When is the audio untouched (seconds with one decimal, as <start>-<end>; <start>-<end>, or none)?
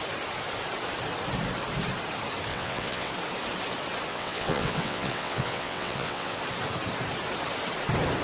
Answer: 0.0-2.5; 3.1-4.1; 6.4-8.2